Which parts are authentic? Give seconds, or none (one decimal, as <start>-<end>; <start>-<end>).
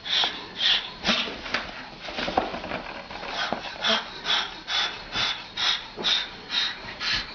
0.0-7.3